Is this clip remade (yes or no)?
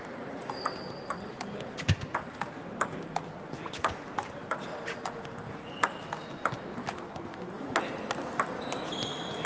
no